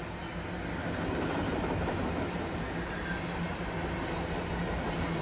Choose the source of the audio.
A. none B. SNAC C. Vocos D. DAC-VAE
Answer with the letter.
A